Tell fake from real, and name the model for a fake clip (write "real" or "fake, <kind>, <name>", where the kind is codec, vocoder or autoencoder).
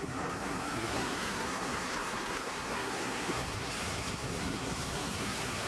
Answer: fake, codec, SNAC